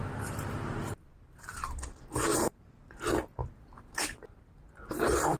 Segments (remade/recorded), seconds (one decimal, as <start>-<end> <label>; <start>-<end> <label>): 0.0-1.7 remade; 1.7-2.3 recorded; 2.3-3.0 remade; 3.0-5.4 recorded